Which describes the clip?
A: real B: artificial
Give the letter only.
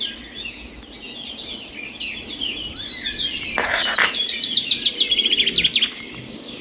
A